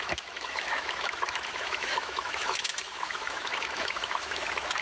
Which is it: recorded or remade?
remade